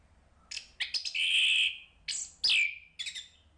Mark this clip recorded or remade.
recorded